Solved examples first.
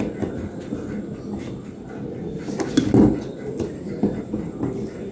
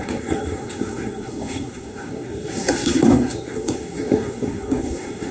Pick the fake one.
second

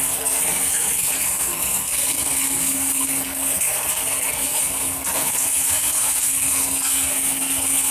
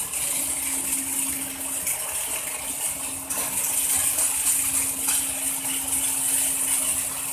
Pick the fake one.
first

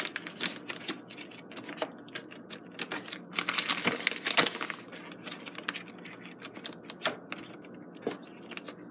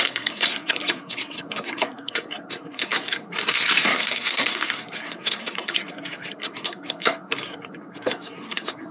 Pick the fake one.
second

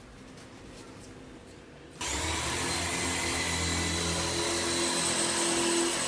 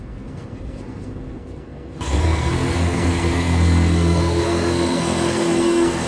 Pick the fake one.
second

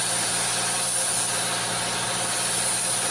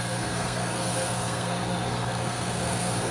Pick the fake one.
second